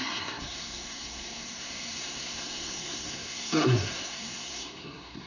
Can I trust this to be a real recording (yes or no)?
no